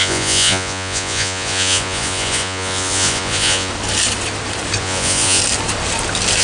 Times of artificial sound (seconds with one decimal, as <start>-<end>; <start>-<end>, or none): 0.0-3.7; 4.8-5.4